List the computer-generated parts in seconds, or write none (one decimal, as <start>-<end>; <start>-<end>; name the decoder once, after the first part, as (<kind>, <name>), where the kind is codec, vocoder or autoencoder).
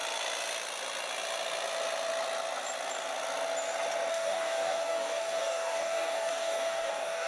4.1-7.3 (codec, DAC)